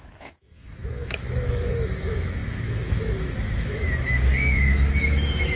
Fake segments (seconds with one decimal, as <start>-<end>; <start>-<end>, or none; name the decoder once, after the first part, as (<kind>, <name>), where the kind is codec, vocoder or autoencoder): 0.0-5.6 (autoencoder, DAC-VAE)